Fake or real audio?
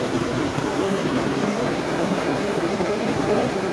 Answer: fake